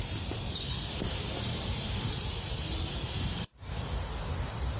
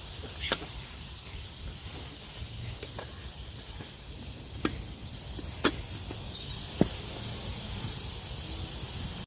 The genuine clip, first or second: second